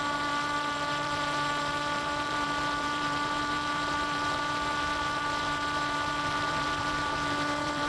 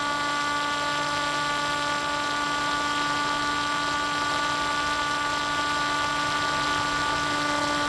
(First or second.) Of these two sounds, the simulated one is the first